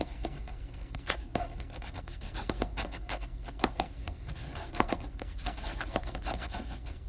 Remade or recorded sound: remade